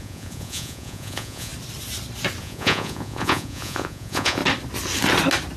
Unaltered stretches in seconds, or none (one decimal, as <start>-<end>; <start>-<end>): 1.5-2.4; 4.4-5.6